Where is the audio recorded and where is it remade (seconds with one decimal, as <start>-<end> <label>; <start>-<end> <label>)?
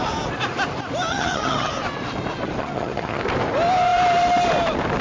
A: 0.0-1.1 recorded; 1.1-1.7 remade; 1.7-2.6 recorded; 2.6-3.2 remade; 3.2-5.0 recorded